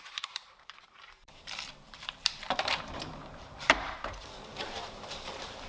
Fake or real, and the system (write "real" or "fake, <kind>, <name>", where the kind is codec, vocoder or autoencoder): fake, vocoder, BigVGAN v2